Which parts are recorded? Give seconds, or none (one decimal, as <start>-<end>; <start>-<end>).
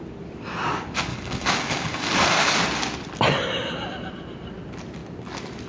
0.0-1.1; 2.6-5.7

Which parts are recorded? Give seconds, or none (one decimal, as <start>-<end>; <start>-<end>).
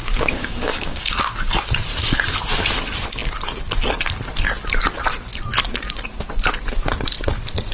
1.2-7.7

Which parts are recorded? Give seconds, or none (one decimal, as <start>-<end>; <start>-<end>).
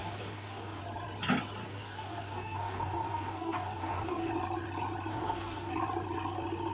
0.8-1.6; 4.3-5.1; 5.7-6.7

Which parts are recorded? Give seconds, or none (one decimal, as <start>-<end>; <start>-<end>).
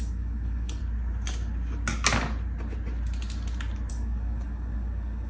0.8-3.9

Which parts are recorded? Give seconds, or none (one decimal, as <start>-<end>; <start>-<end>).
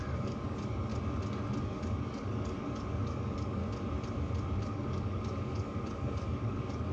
0.9-1.6; 3.6-4.6